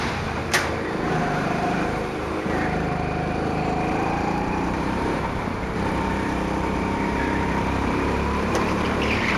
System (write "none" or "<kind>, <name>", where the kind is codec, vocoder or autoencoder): vocoder, BigVGAN v2